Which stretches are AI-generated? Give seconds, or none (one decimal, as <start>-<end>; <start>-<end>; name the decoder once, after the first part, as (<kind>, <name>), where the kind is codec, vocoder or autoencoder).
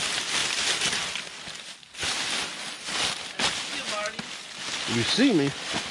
none